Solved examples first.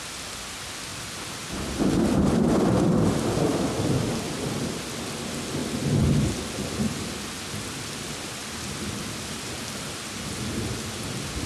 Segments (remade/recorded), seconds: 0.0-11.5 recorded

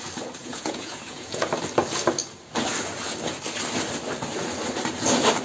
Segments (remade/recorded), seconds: 0.0-0.4 recorded; 0.4-1.5 remade; 1.5-5.4 recorded

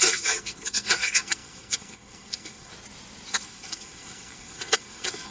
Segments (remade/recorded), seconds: 0.0-2.7 remade; 2.7-3.3 recorded; 3.3-5.3 remade